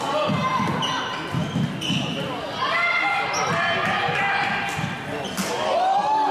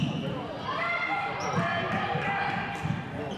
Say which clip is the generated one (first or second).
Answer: second